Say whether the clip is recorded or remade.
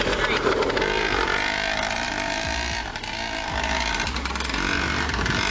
recorded